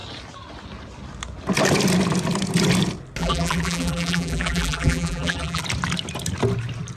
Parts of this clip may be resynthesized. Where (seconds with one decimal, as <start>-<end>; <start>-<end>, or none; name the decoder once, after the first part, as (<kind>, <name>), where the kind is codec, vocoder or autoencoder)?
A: 3.2-5.6 (vocoder, BigVGAN v2)